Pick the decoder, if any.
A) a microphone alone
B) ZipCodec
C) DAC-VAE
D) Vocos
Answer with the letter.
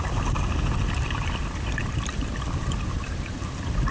A